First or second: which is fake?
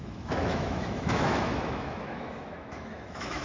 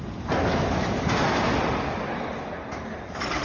first